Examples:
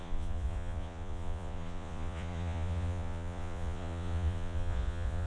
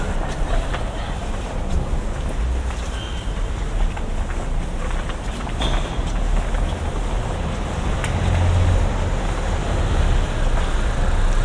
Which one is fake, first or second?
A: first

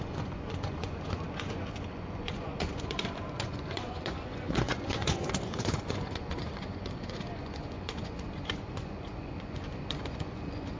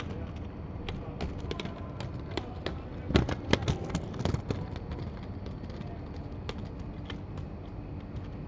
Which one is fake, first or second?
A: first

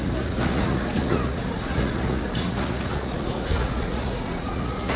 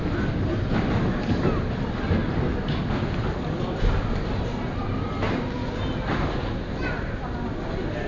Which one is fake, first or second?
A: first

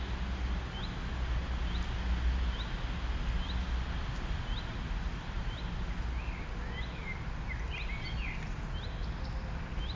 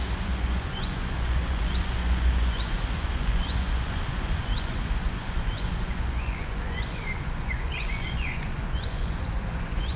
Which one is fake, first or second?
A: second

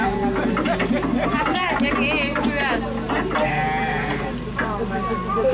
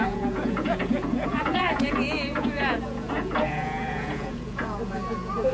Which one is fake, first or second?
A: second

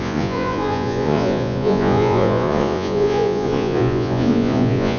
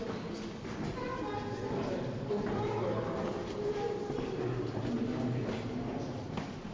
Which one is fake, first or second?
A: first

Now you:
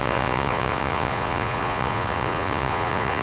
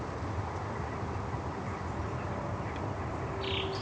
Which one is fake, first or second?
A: first